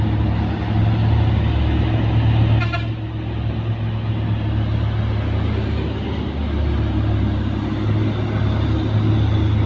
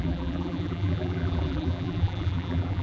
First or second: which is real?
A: first